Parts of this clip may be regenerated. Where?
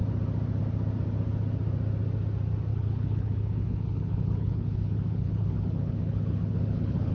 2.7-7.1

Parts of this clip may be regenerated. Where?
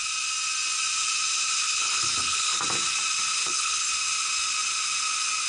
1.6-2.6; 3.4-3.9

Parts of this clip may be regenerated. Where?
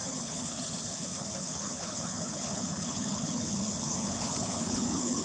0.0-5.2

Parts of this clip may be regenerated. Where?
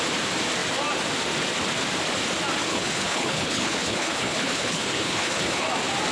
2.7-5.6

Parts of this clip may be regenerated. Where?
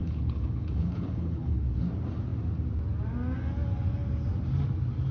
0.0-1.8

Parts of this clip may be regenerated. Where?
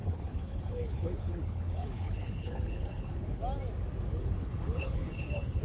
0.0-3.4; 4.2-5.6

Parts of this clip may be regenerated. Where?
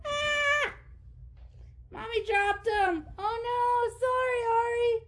none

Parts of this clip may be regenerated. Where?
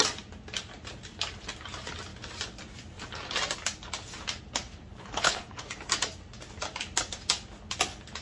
5.0-5.6